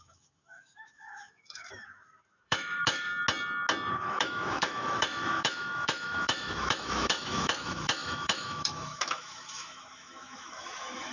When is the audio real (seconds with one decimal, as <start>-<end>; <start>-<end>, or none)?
3.1-3.9